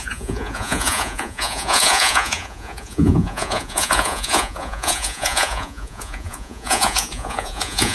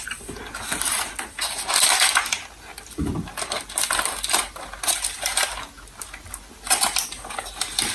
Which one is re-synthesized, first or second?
first